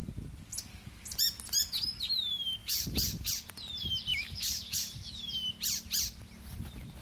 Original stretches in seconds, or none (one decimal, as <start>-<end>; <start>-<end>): 0.0-2.6; 3.3-4.1; 5.2-7.0